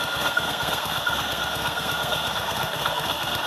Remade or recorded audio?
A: remade